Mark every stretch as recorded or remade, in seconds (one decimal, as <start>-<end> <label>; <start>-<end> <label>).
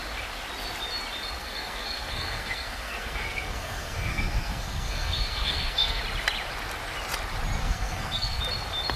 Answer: 0.0-1.4 recorded; 1.4-6.0 remade; 6.0-7.6 recorded; 7.6-8.4 remade; 8.4-9.0 recorded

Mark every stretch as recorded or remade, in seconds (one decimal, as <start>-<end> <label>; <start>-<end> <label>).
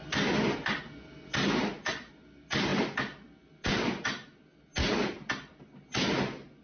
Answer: 0.0-6.6 recorded